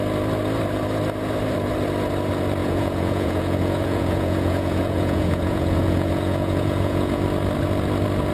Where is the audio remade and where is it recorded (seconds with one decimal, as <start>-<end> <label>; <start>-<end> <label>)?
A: 0.0-2.6 recorded; 2.6-7.2 remade; 7.2-8.3 recorded